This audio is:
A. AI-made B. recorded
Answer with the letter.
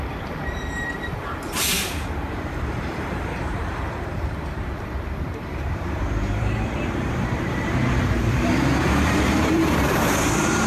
A